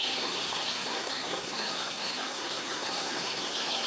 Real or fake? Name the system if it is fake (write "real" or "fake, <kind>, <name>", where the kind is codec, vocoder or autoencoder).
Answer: fake, codec, SNAC